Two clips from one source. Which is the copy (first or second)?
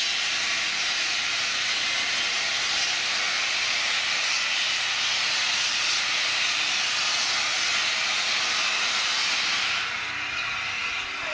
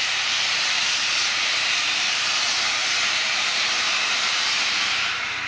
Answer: second